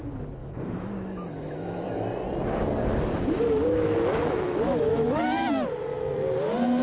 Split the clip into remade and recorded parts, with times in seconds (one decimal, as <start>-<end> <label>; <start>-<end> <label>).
0.0-0.4 recorded; 0.4-1.9 remade; 1.9-4.1 recorded; 4.1-5.2 remade; 5.2-6.8 recorded